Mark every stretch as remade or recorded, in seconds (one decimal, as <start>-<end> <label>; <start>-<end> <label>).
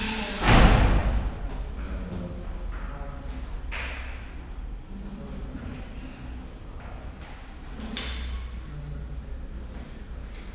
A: 0.0-10.5 recorded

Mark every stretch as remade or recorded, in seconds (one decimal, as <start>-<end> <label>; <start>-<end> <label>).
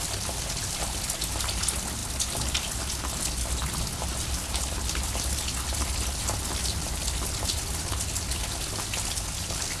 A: 0.0-9.8 recorded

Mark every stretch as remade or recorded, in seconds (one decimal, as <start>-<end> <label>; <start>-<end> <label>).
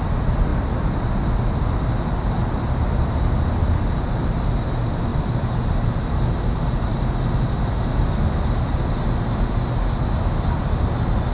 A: 0.0-11.3 recorded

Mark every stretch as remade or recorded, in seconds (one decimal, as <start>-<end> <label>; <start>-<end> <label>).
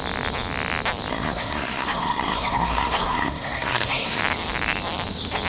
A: 0.0-1.1 recorded; 1.1-4.2 remade; 4.2-5.5 recorded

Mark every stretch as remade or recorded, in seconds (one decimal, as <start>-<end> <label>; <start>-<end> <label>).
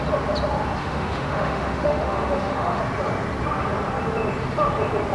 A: 0.0-0.8 recorded; 0.8-2.8 remade; 2.8-5.1 recorded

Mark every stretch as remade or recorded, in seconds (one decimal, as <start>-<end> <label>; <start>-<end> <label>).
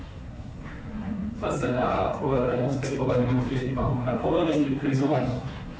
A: 0.0-5.8 remade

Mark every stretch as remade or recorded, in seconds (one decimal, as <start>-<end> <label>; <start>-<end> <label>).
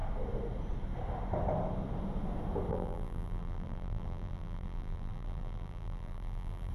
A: 0.0-2.7 recorded; 2.7-6.7 remade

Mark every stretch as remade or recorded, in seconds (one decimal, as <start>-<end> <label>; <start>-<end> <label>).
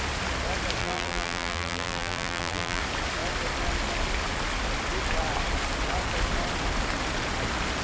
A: 0.0-0.8 recorded; 0.8-2.8 remade; 2.8-7.8 recorded